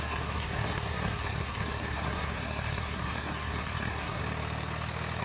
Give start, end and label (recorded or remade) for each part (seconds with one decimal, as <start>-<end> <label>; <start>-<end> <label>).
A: 0.0-4.2 remade; 4.2-5.2 recorded